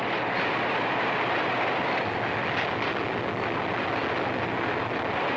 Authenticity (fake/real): real